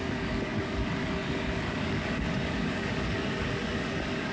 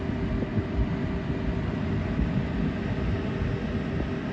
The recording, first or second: second